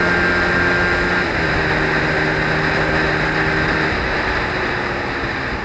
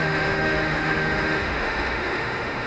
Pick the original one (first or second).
first